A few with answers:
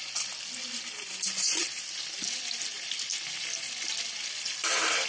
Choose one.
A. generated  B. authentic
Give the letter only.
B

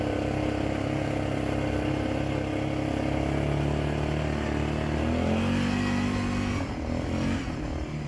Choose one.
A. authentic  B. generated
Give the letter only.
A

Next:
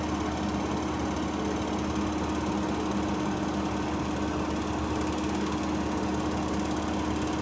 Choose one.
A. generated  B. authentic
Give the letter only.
B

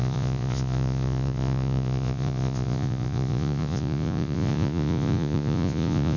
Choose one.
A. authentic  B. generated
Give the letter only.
B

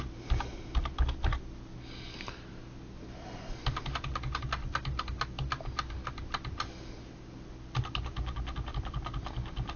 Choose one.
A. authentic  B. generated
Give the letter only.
A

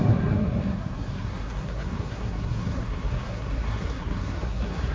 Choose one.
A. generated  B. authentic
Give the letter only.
A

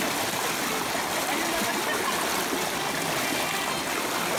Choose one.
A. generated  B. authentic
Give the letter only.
B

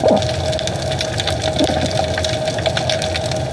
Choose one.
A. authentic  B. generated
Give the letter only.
A